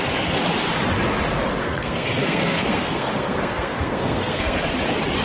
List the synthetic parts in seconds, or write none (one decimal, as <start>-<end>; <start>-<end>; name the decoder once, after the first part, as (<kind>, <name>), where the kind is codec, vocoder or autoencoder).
1.6-4.7 (codec, SNAC)

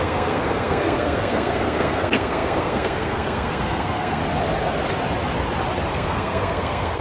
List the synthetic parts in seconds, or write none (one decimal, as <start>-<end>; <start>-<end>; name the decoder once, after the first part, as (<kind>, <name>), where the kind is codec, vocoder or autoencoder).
0.0-4.2 (codec, SNAC); 5.9-7.0

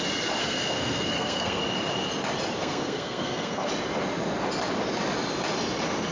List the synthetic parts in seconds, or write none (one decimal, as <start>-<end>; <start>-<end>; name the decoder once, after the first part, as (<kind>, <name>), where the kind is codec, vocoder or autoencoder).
0.4-1.6 (codec, SNAC); 2.6-3.7

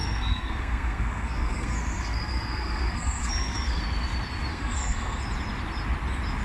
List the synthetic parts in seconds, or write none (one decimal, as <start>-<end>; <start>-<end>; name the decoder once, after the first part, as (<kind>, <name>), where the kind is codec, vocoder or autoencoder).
0.0-3.8 (codec, SNAC); 4.5-5.2

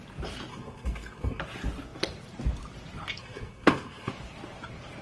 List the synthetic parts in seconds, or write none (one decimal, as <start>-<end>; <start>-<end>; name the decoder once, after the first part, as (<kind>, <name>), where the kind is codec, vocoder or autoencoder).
0.5-1.4 (codec, SNAC); 3.2-4.1

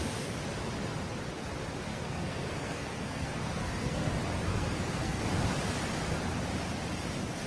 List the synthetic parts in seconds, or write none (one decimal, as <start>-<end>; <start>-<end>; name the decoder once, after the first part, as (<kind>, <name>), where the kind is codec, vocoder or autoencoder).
1.9-4.1 (codec, SNAC); 4.5-5.2

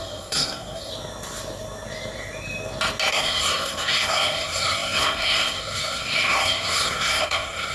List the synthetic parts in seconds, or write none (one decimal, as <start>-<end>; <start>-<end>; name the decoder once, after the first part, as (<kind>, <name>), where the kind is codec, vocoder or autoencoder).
0.0-0.9 (codec, SNAC); 3.1-7.7

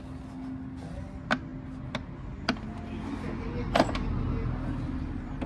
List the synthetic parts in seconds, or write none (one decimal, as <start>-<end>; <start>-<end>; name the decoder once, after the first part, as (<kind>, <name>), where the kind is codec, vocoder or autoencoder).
none